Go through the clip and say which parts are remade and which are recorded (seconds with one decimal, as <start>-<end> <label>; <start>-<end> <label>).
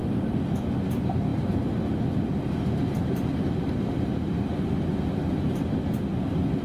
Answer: 0.0-0.9 recorded; 0.9-6.6 remade